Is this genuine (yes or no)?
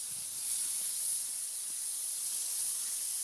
yes